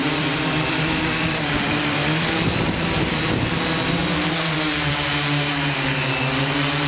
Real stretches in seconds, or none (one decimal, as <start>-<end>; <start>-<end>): 3.4-4.0; 4.9-6.9